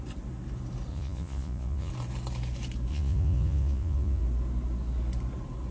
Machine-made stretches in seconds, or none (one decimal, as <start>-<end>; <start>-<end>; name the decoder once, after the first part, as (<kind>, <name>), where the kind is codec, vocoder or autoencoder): 0.9-1.9 (vocoder, Vocos); 2.9-4.2